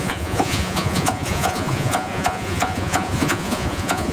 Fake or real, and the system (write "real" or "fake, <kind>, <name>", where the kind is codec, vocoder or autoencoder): fake, vocoder, Vocos